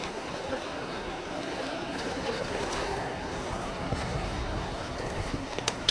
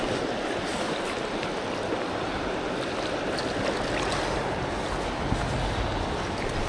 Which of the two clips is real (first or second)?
second